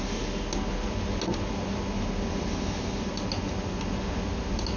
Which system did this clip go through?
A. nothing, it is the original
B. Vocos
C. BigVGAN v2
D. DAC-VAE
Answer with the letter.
A